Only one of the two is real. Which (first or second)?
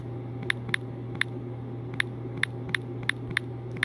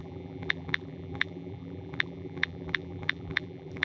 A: first